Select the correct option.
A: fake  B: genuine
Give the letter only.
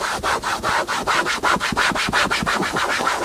B